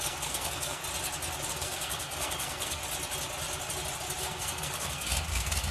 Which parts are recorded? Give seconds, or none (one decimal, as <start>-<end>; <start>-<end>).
0.8-1.5; 2.8-4.2